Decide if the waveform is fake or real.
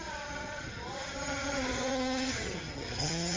fake